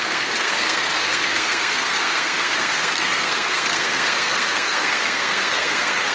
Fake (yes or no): yes